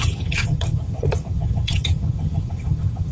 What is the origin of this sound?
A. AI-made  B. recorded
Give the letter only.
A